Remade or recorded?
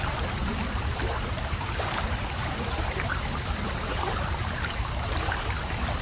remade